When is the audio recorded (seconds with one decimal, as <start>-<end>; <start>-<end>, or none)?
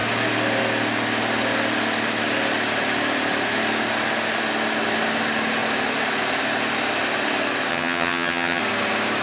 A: 0.0-7.7; 8.6-9.2